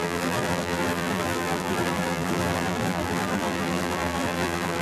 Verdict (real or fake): fake